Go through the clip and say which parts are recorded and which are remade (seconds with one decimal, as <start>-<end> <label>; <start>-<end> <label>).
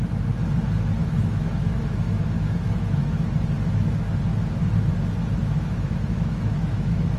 0.0-1.0 recorded; 1.0-3.3 remade; 3.3-5.4 recorded; 5.4-7.2 remade